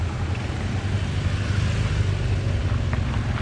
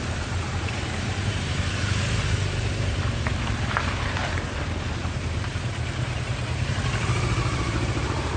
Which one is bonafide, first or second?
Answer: first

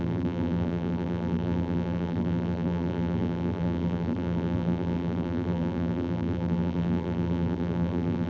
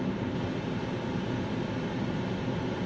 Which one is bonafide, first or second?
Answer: second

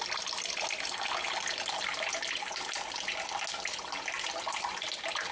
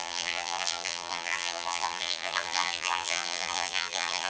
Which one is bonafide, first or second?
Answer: first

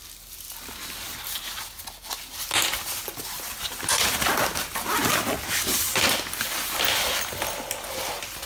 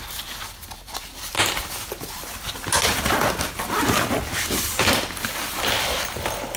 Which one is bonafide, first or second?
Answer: first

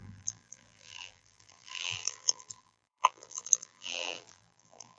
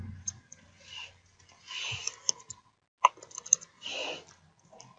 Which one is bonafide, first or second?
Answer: second